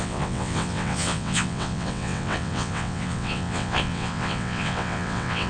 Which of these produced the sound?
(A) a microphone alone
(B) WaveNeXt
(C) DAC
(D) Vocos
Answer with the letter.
B